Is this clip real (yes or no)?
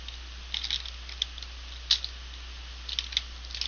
yes